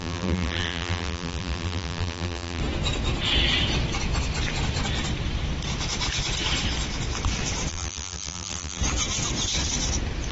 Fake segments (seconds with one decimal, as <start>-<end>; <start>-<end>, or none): 0.0-2.6; 7.7-8.8